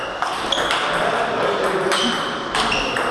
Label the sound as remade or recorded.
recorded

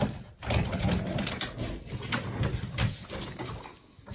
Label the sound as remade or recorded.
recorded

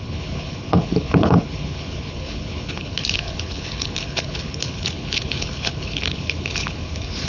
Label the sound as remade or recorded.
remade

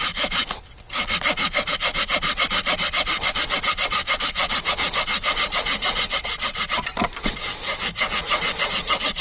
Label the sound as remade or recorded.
recorded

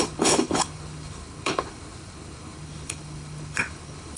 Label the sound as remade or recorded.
remade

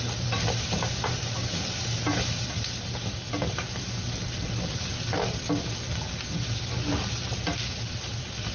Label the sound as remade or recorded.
recorded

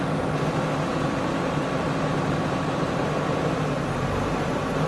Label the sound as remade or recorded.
recorded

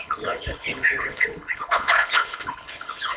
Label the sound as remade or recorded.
remade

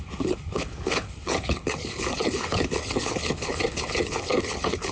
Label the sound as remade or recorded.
remade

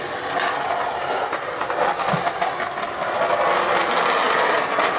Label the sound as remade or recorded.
recorded